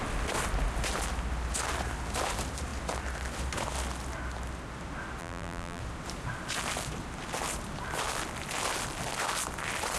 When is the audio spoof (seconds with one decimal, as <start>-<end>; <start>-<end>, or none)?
5.2-5.8